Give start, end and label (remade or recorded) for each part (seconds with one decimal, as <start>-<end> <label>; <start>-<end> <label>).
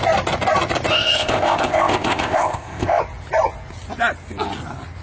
0.0-0.9 recorded; 0.9-3.0 remade; 3.0-5.0 recorded